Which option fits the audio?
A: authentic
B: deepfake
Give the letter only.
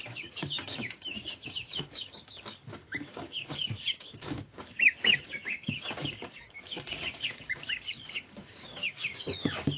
B